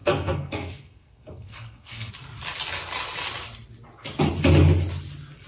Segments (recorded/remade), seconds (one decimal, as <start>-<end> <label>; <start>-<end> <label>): 0.0-2.1 remade; 2.1-5.5 recorded